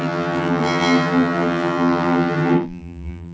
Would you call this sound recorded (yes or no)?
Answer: no